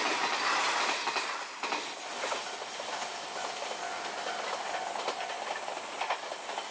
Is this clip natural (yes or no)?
yes